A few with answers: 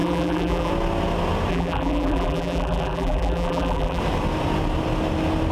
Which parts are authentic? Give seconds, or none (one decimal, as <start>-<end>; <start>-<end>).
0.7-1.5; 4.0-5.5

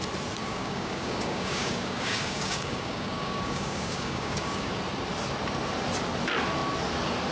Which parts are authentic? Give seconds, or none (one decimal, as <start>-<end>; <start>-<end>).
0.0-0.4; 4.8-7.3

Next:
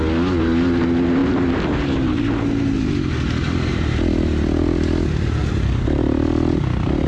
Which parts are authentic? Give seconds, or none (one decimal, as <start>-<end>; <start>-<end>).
0.0-5.4; 6.0-7.1

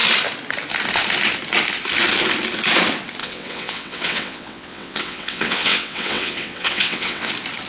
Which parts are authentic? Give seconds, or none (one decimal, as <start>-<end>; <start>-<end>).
0.0-3.2; 7.3-7.7

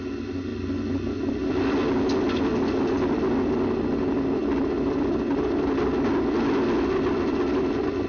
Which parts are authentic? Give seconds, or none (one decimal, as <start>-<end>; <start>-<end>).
0.0-8.1

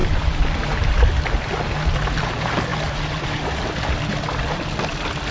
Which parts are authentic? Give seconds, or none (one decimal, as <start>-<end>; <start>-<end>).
0.0-5.3

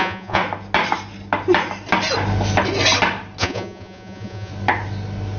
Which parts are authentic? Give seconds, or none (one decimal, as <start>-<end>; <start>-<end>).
0.4-3.4; 4.5-5.4

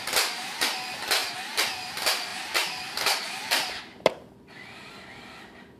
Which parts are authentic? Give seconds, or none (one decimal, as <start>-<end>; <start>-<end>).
0.0-5.8